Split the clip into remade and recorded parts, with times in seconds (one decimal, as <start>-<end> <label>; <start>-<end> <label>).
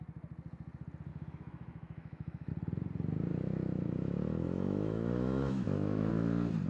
0.0-1.1 recorded; 1.1-2.5 remade; 2.5-3.3 recorded; 3.3-6.1 remade; 6.1-6.7 recorded